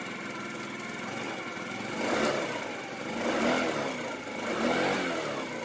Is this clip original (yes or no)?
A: yes